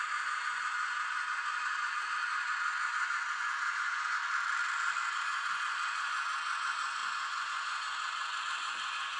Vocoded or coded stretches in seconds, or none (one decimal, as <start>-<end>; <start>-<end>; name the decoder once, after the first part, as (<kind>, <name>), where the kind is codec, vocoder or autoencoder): 0.0-4.2 (vocoder, Vocos); 5.0-9.2